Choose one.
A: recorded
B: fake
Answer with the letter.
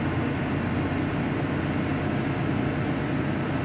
A